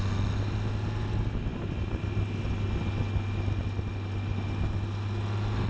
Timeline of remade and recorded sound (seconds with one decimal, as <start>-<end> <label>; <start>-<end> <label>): 0.0-5.7 recorded